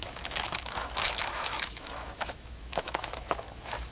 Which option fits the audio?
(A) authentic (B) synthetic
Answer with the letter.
B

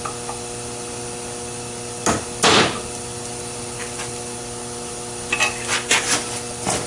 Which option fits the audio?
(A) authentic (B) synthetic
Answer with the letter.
A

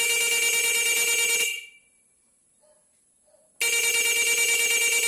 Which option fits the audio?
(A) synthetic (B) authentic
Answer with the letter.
B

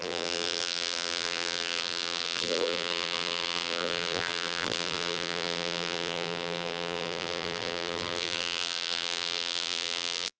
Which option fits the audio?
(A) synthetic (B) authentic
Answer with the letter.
A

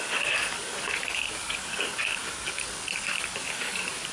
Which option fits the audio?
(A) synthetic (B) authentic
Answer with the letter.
A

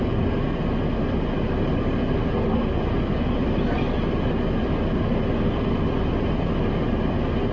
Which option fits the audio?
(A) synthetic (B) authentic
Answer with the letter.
B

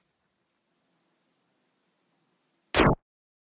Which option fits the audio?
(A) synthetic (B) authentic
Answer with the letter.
B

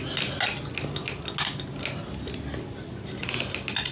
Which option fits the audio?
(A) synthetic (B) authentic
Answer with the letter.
B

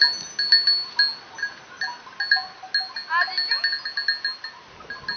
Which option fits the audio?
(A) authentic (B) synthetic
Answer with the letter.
A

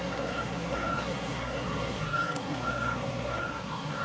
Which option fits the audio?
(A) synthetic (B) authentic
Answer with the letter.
A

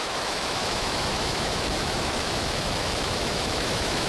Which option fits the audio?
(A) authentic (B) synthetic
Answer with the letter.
B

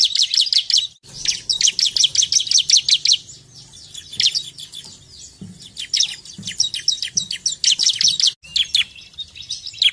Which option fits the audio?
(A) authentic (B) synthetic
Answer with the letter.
A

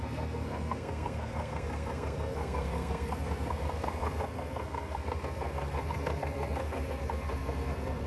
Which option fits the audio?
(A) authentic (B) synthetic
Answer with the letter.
B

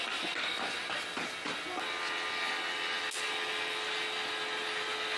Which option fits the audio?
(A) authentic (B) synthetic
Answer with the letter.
A